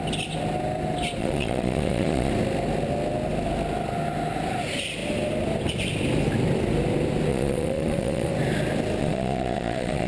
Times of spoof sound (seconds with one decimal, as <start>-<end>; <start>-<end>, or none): 1.2-2.3; 7.3-8.3; 9.0-10.1